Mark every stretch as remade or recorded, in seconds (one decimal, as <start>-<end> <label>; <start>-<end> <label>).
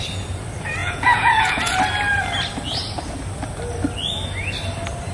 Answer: 0.0-0.8 recorded; 0.8-1.8 remade; 1.8-5.1 recorded